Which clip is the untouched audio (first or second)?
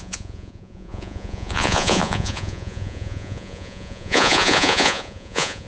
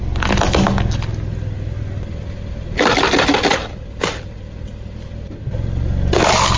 second